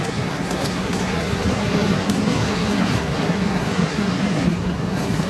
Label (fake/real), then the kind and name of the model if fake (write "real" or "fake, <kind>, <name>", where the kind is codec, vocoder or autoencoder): fake, codec, SNAC